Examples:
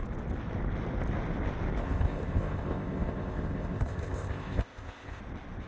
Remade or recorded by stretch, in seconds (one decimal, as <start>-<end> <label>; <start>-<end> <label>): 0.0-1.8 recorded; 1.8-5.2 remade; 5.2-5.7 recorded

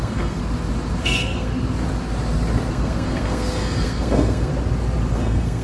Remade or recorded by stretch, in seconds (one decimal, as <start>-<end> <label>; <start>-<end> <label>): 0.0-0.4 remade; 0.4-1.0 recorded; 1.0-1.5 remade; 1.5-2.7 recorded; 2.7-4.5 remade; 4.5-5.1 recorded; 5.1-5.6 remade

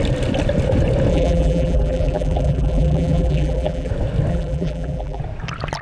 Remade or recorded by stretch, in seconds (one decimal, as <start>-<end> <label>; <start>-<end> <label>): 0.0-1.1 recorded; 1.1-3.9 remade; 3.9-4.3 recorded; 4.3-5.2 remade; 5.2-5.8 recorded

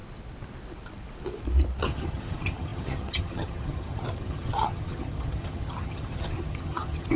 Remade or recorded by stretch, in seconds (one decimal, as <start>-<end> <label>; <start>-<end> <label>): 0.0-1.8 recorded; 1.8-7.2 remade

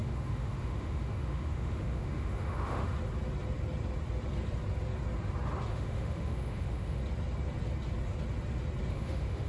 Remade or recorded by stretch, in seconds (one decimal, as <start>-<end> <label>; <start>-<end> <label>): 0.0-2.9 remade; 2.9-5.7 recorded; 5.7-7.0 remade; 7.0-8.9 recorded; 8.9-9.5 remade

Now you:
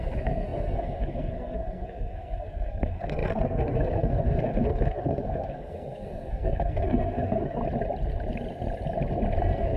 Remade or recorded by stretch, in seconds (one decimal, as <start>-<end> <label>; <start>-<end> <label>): 0.0-7.6 remade; 7.6-9.4 recorded; 9.4-9.8 remade